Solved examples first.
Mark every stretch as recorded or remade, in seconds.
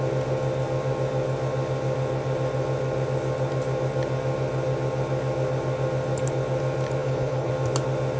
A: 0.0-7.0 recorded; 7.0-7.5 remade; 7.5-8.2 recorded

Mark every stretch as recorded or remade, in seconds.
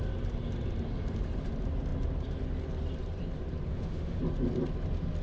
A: 0.0-3.7 recorded; 3.7-4.2 remade; 4.2-5.2 recorded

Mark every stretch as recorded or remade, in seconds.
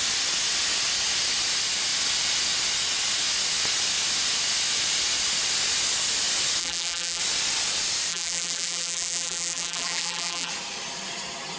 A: 0.0-6.6 recorded; 6.6-7.2 remade; 7.2-8.1 recorded; 8.1-10.5 remade; 10.5-11.6 recorded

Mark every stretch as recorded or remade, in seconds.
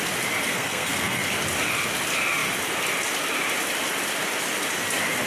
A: 0.0-0.5 recorded; 0.5-1.2 remade; 1.2-5.3 recorded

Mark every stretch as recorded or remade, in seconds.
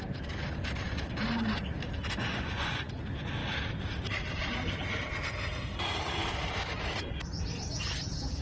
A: 0.0-2.3 recorded; 2.3-3.0 remade; 3.0-8.4 recorded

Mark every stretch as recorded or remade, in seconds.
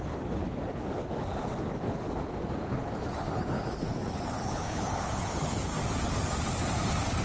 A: 0.0-5.7 remade; 5.7-7.2 recorded